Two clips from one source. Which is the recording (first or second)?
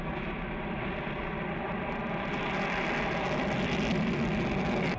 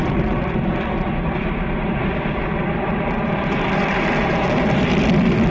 first